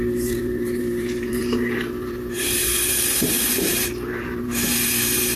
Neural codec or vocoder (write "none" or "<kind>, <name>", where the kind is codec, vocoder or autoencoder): vocoder, BigVGAN v2